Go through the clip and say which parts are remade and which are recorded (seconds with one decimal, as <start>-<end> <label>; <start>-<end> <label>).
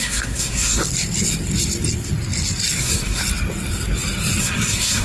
0.0-0.8 remade; 0.8-2.8 recorded; 2.8-3.2 remade; 3.2-4.4 recorded; 4.4-5.0 remade